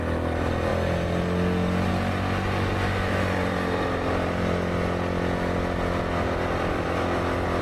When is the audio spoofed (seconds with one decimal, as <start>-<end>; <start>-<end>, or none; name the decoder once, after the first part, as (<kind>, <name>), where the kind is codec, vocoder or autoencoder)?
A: none